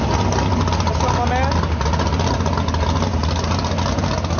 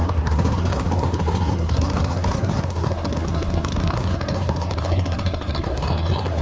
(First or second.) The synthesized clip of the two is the second